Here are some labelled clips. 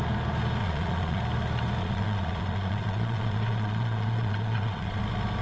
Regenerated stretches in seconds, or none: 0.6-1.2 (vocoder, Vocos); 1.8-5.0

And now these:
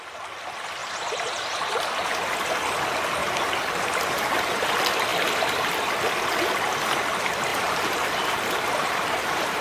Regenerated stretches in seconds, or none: 0.8-2.1 (vocoder, BigVGAN v2); 3.2-4.4; 7.5-9.6

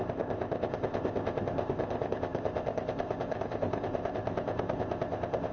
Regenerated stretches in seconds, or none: 0.0-5.5 (codec, ZipCodec)

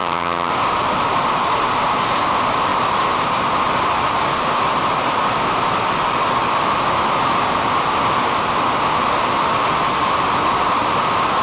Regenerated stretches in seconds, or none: 0.0-0.5 (vocoder, HiFi-GAN)

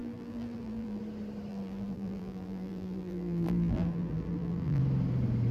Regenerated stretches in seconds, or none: 0.0-1.0 (vocoder, BigVGAN v2); 1.5-4.8

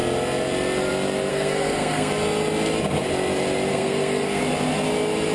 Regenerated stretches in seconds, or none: 1.3-2.1 (codec, SNAC); 3.7-4.4